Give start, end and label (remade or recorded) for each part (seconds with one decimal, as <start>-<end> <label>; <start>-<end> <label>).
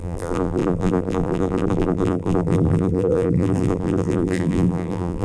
0.0-5.2 remade